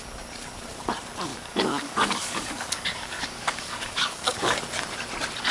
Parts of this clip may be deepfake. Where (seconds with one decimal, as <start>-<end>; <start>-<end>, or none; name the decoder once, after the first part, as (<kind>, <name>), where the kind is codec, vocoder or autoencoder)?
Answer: 1.3-4.6 (codec, DAC)